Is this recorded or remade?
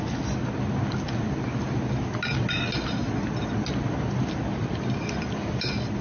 recorded